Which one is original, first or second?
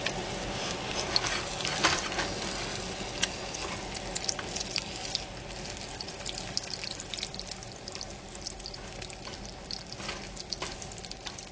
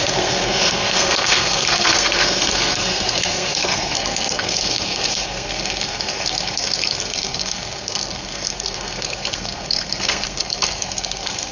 first